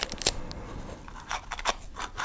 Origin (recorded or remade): recorded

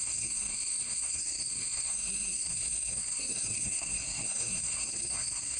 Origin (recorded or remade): remade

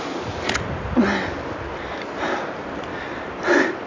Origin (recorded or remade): recorded